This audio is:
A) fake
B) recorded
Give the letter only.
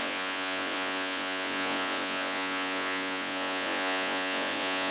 A